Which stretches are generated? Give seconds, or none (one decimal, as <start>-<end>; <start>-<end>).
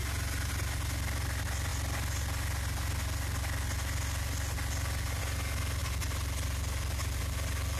none